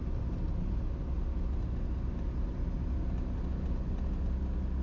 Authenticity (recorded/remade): recorded